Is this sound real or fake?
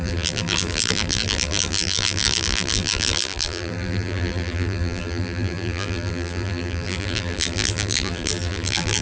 fake